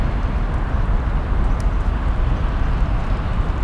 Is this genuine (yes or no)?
yes